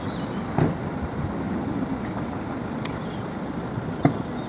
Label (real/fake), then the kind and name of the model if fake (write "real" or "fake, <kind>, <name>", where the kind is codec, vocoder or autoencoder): real